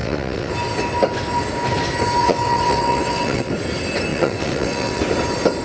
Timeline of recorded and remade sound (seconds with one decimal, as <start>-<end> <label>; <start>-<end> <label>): 0.0-0.5 remade; 0.5-2.2 recorded; 2.2-3.5 remade; 3.5-4.1 recorded; 4.1-5.0 remade; 5.0-5.6 recorded

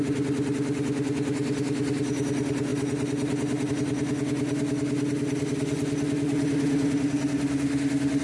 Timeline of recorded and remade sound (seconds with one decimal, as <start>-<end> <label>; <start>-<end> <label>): 0.0-8.2 recorded

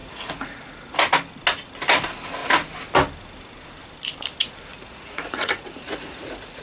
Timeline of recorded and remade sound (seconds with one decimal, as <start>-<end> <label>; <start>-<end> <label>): 0.0-0.6 remade; 0.6-4.7 recorded; 4.7-6.6 remade

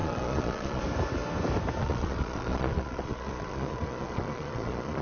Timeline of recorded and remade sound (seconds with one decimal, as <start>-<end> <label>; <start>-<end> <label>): 0.0-0.8 remade; 0.8-1.8 recorded; 1.8-5.0 remade